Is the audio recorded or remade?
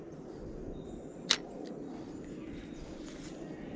recorded